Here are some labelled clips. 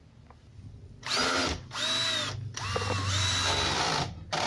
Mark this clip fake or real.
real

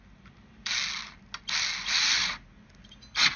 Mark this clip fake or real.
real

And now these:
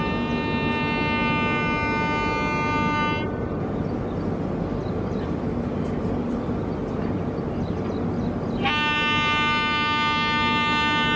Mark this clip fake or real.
real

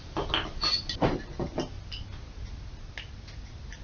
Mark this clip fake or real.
real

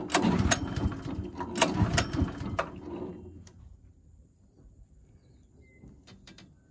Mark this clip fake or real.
real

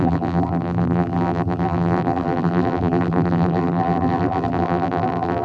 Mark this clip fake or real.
fake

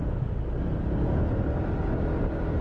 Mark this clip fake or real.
real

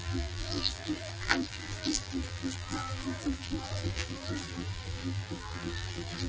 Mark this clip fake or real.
fake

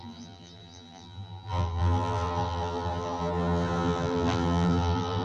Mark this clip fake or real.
fake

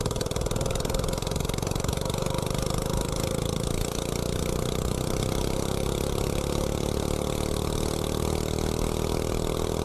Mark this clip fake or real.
real